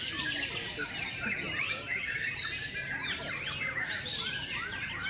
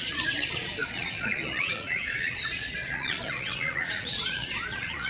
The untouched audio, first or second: first